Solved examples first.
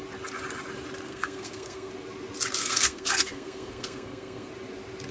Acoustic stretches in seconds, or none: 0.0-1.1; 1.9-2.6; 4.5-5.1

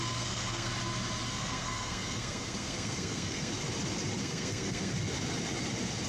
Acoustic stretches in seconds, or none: 0.7-1.3; 3.5-4.2; 4.9-6.1

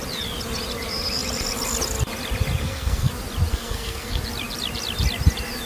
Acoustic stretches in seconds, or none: 0.0-2.6; 3.1-3.5; 4.2-5.7